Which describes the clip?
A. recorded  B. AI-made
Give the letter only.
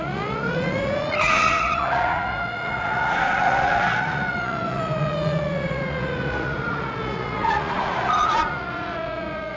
B